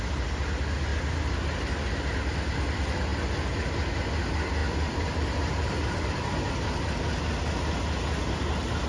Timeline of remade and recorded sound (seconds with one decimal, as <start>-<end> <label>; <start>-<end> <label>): 0.0-0.9 recorded; 0.9-1.6 remade; 1.6-4.6 recorded; 4.6-6.5 remade; 6.5-8.9 recorded